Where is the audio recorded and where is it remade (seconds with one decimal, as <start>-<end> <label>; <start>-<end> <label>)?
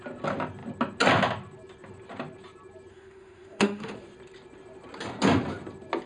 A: 0.0-2.9 recorded; 2.9-3.9 remade; 3.9-6.1 recorded